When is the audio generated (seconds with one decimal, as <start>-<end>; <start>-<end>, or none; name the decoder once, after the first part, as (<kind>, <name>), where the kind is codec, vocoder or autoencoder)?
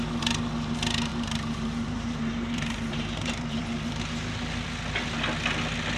1.1-4.0 (vocoder, BigVGAN v2)